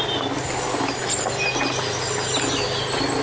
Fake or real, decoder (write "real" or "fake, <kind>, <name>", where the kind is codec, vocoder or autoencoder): real